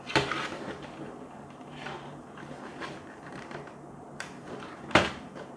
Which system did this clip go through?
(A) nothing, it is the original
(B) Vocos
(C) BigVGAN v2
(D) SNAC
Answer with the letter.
C